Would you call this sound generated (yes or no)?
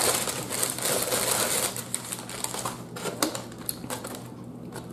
no